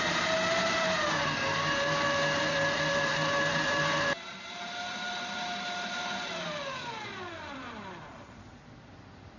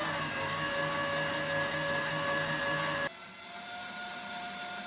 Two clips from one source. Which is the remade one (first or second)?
first